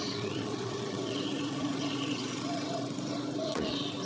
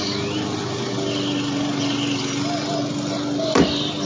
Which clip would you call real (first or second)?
second